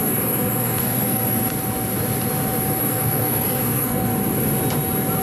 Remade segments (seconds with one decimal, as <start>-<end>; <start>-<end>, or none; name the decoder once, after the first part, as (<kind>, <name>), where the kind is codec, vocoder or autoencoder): 0.0-1.2 (codec, SNAC); 2.8-4.1